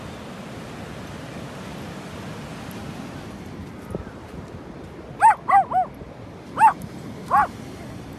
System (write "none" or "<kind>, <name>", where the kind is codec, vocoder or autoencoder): none